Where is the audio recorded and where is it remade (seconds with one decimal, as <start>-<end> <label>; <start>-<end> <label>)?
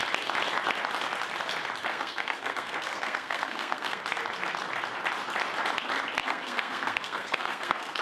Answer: 0.0-1.9 recorded; 1.9-4.0 remade; 4.0-6.2 recorded; 6.2-8.0 remade